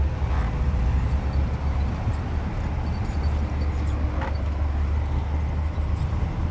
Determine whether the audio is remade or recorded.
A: recorded